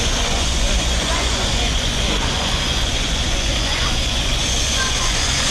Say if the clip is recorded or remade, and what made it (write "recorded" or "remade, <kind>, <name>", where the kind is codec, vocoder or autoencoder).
remade, vocoder, Vocos